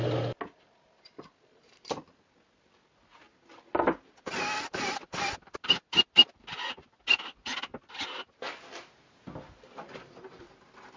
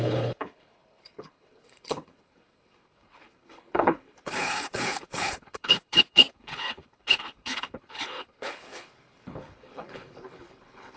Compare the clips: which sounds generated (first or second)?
second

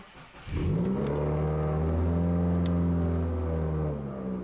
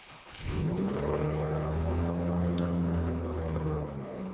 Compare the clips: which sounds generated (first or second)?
second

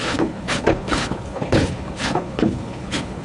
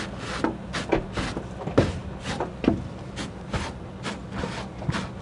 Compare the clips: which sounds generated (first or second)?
first